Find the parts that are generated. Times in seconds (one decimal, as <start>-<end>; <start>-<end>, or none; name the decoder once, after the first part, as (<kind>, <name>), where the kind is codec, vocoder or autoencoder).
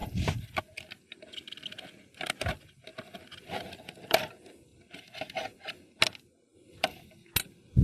0.0-0.6 (vocoder, BigVGAN v2); 2.9-4.3; 6.5-7.2